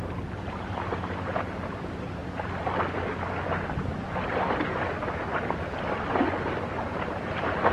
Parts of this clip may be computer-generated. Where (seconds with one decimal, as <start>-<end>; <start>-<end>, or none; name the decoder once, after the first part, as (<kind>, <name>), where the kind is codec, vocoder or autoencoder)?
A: none